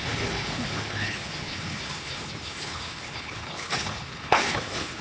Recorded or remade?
remade